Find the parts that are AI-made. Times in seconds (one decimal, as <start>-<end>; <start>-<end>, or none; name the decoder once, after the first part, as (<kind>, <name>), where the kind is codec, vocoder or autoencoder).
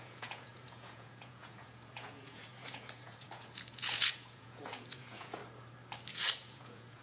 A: 0.0-5.4 (vocoder, Vocos); 6.1-7.0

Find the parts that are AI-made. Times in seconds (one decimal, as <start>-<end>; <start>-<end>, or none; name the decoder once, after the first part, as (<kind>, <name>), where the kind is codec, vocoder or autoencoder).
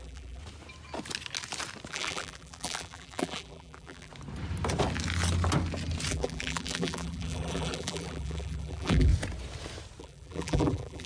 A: 0.0-0.4 (vocoder, BigVGAN v2); 1.9-4.1; 6.1-9.1; 10.0-11.1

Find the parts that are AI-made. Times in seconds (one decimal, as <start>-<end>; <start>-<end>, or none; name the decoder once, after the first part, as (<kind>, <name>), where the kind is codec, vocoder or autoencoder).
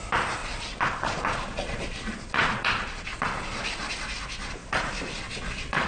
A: 0.4-3.9 (vocoder, Vocos); 4.6-5.9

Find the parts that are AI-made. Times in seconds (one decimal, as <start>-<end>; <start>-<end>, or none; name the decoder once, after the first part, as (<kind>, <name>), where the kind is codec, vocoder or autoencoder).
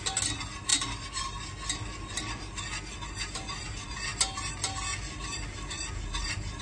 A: none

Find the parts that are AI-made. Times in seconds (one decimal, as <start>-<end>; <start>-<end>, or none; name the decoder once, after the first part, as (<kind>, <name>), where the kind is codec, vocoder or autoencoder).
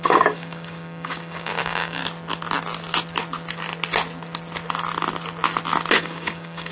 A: 0.0-2.0 (codec, DAC); 6.0-6.7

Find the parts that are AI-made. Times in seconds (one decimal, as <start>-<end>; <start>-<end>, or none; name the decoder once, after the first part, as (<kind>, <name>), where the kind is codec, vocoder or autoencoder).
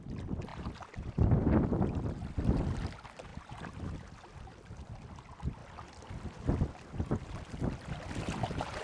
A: 0.5-2.3 (vocoder, BigVGAN v2); 3.3-5.1; 5.6-6.1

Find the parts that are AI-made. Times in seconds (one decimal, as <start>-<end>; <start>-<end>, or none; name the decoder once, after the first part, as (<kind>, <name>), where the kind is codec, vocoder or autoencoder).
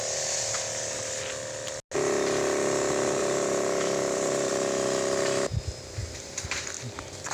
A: 3.2-4.5 (vocoder, BigVGAN v2); 6.0-6.7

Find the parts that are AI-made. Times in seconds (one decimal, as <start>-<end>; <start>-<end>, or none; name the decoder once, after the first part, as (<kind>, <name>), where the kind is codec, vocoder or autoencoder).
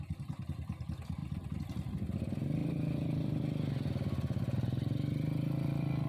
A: 1.2-1.9 (vocoder, BigVGAN v2)